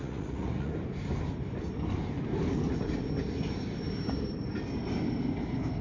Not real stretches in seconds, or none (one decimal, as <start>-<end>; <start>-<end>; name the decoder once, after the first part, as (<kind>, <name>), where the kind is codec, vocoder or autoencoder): 0.0-0.7 (vocoder, Vocos)